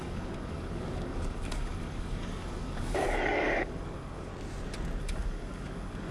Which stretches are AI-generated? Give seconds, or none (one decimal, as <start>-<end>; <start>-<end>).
0.0-4.3; 5.0-6.1